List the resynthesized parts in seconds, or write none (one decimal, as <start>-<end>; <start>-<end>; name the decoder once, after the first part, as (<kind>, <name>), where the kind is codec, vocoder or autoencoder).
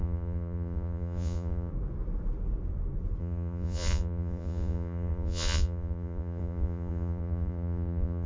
0.0-1.7 (vocoder, Vocos); 3.2-8.3